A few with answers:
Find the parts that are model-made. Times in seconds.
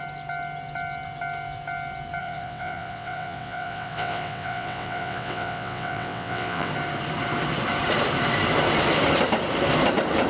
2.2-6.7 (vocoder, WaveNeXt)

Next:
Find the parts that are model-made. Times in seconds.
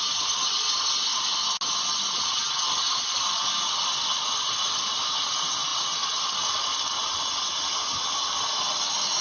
none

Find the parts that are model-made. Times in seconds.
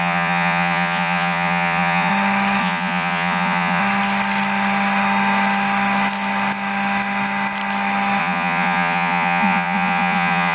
0.0-2.1 (vocoder, Vocos); 2.6-3.8; 8.2-10.5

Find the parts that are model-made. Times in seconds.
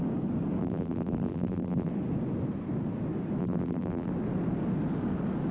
0.6-1.9 (vocoder, BigVGAN v2); 3.4-4.1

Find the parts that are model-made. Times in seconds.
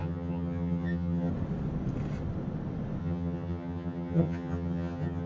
0.0-1.3 (vocoder, HiFi-GAN); 3.0-5.3